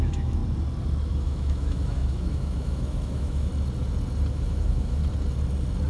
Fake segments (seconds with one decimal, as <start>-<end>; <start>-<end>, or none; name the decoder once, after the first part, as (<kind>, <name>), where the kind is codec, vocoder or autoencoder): 0.0-0.4 (autoencoder, DAC-VAE); 1.1-3.5; 4.3-5.0